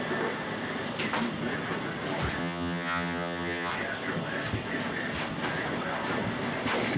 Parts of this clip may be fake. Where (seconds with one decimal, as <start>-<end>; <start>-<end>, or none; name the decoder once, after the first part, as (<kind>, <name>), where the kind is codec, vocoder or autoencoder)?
2.4-3.7 (vocoder, HiFi-GAN)